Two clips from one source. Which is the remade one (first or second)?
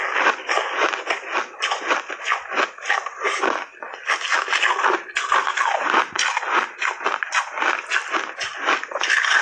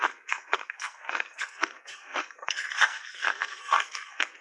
second